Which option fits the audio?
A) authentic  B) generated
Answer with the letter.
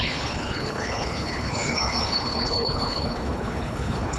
B